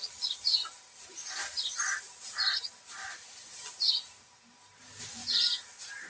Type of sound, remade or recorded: recorded